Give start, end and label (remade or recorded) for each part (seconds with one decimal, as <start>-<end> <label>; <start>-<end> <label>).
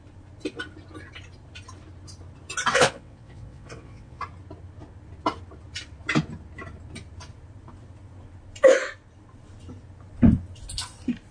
0.0-2.7 recorded; 2.7-4.2 remade; 4.2-11.3 recorded